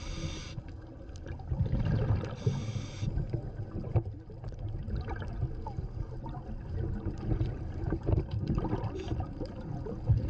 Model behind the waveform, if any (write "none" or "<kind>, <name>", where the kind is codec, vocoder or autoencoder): none